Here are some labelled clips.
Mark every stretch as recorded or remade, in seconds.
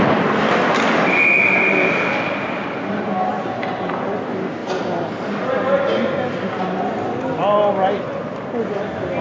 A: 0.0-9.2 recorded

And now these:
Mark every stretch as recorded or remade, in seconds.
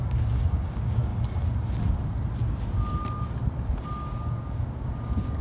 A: 0.0-1.1 remade; 1.1-4.3 recorded; 4.3-5.4 remade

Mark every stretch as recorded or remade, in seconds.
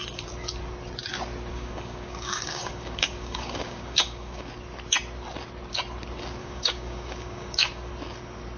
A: 0.0-1.5 recorded; 1.5-4.5 remade; 4.5-6.4 recorded; 6.4-7.9 remade; 7.9-8.6 recorded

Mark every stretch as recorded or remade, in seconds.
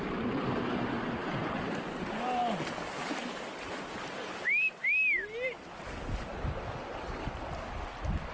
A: 0.0-8.3 recorded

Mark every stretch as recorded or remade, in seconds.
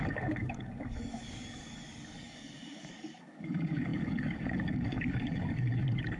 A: 0.0-6.2 remade